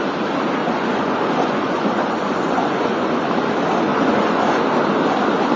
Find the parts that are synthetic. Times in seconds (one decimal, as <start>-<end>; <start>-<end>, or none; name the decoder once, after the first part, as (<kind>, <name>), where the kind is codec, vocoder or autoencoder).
0.6-3.3 (vocoder, Vocos); 3.9-4.6